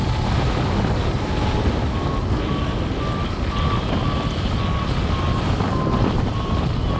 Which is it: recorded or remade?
recorded